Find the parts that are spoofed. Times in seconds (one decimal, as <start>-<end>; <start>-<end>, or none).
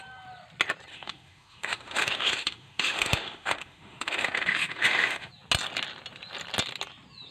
0.9-5.3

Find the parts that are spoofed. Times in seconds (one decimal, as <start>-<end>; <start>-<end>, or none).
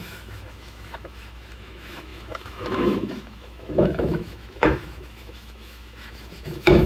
0.0-6.9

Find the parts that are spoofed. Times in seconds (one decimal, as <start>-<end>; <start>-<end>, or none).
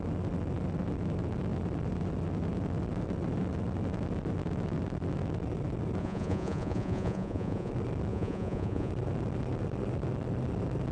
6.0-7.7; 8.1-8.9